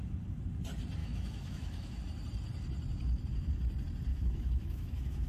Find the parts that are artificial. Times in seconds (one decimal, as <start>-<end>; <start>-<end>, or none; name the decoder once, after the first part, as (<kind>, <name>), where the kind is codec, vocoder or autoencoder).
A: 1.0-2.0 (autoencoder, DAC-VAE); 4.1-5.3